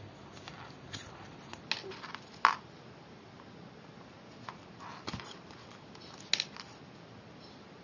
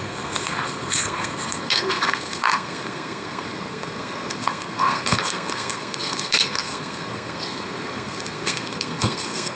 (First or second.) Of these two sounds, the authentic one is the first